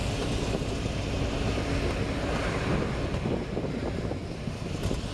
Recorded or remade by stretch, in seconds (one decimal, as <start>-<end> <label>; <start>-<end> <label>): 0.0-5.1 recorded

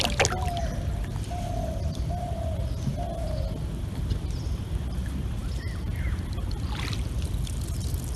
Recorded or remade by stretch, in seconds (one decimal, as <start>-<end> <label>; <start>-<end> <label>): 0.0-8.2 recorded

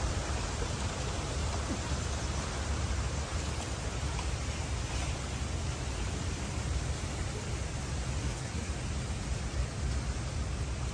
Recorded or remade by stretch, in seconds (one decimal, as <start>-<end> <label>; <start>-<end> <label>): 0.0-8.2 recorded; 8.2-8.7 remade; 8.7-10.9 recorded

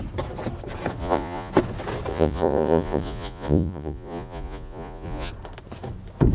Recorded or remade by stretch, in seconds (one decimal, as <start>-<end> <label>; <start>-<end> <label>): 0.0-1.0 recorded; 1.0-1.5 remade; 1.5-2.1 recorded; 2.1-5.3 remade; 5.3-6.3 recorded

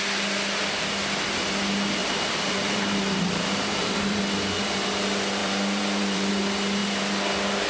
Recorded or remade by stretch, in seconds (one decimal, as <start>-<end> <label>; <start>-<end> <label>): 0.0-2.0 recorded; 2.0-4.2 remade; 4.2-5.4 recorded; 5.4-6.3 remade; 6.3-7.7 recorded